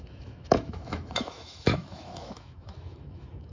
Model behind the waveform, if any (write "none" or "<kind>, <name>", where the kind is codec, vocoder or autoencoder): autoencoder, DAC-VAE